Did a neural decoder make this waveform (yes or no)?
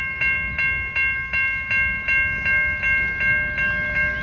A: no